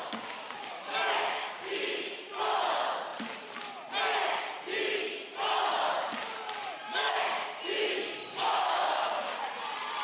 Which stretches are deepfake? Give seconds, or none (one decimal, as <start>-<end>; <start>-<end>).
0.0-1.7; 6.9-7.6; 8.3-9.4